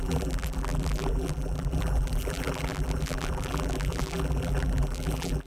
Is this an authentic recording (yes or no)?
no